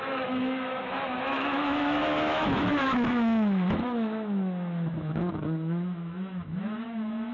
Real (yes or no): no